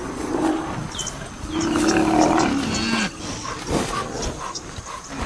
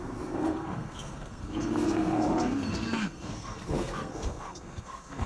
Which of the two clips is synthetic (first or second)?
second